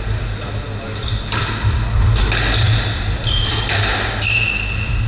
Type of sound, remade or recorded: recorded